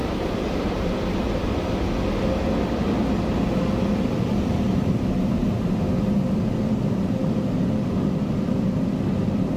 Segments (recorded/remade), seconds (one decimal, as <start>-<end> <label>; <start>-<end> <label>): 0.0-1.0 remade; 1.0-9.6 recorded